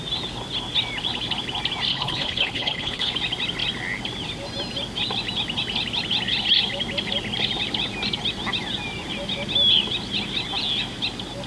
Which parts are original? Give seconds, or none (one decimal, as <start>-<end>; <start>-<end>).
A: 0.0-1.9; 3.1-11.5